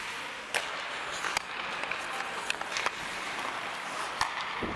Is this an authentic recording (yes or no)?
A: yes